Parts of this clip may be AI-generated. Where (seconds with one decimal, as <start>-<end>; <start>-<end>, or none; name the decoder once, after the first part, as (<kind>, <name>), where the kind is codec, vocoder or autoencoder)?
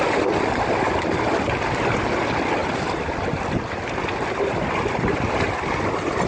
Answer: none